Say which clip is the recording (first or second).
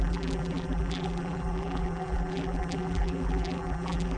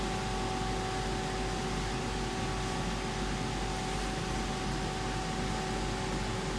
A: second